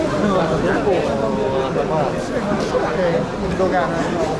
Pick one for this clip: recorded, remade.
recorded